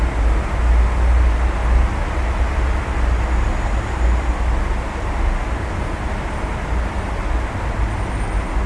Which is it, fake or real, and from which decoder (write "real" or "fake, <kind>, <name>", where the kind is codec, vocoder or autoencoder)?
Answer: real